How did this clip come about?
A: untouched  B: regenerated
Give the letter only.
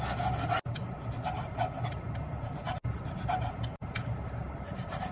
A